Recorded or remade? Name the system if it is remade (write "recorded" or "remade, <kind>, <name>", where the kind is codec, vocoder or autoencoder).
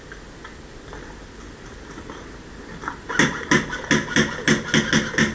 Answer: recorded